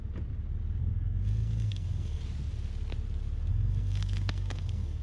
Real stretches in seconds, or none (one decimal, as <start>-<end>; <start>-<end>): 0.0-0.8; 2.2-3.5